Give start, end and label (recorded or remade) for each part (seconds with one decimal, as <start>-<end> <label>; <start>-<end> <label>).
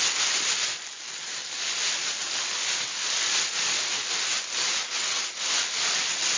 0.0-4.8 recorded; 4.8-5.3 remade; 5.3-6.4 recorded